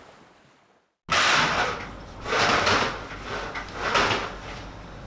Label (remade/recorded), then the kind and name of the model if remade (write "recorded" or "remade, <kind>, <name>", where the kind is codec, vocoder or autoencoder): recorded